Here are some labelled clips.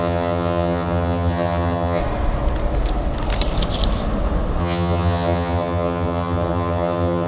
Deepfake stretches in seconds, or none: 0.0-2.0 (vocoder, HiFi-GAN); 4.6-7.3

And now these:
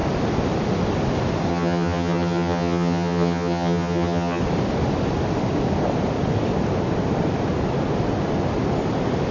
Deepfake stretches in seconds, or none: 1.5-4.4 (vocoder, HiFi-GAN)